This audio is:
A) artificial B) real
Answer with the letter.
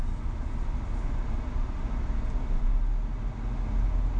B